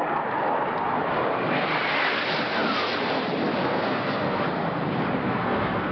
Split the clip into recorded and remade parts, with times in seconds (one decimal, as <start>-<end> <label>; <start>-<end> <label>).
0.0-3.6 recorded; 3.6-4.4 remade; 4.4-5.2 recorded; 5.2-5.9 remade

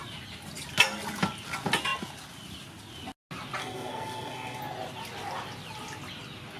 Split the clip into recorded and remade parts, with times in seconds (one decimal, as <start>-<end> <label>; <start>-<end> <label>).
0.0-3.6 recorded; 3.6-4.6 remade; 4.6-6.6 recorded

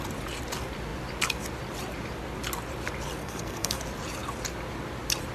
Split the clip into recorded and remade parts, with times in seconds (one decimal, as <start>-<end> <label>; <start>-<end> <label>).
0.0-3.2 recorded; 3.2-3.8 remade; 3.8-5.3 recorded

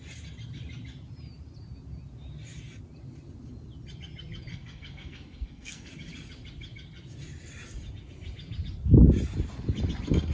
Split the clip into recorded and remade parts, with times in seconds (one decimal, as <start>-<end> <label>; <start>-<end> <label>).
0.0-4.5 recorded; 4.5-5.9 remade; 5.9-10.3 recorded

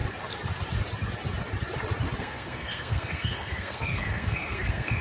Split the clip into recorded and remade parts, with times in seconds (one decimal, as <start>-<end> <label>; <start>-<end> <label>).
0.0-2.2 recorded; 2.2-5.0 remade